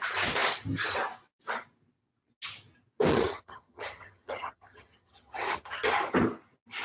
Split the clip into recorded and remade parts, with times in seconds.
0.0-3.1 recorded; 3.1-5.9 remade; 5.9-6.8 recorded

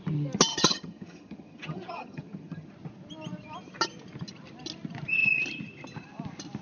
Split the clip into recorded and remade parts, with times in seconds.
0.0-0.5 recorded; 0.5-2.7 remade; 2.7-6.6 recorded

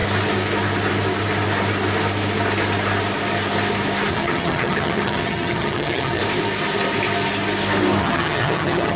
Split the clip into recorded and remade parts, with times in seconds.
0.0-4.1 recorded; 4.1-6.2 remade; 6.2-8.0 recorded; 8.0-9.0 remade